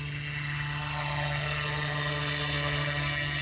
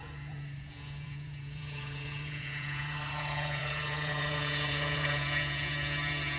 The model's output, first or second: second